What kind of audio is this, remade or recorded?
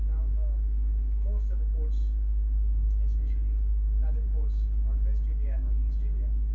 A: remade